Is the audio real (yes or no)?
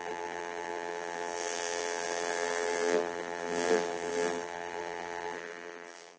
no